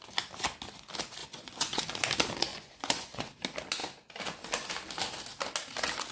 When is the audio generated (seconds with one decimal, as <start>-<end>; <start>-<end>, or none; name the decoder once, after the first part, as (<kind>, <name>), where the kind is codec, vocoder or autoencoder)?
1.2-1.8 (vocoder, Vocos); 2.5-3.3